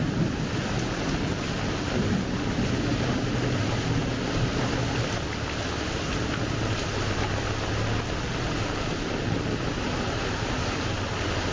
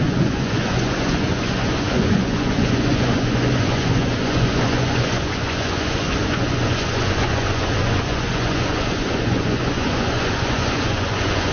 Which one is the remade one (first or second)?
second